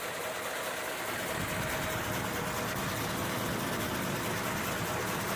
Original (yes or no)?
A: yes